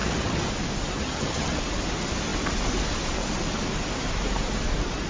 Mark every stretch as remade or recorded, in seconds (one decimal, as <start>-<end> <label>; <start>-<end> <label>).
0.0-0.5 remade; 0.5-1.0 recorded; 1.0-1.6 remade; 1.6-5.1 recorded